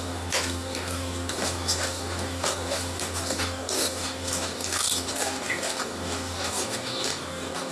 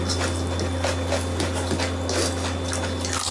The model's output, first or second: first